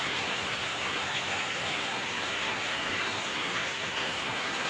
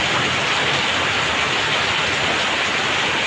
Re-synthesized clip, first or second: first